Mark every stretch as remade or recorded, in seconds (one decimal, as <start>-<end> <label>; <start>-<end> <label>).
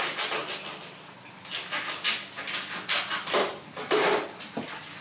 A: 0.0-5.0 recorded